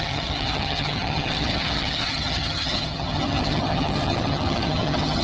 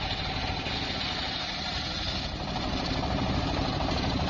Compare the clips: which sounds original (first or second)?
second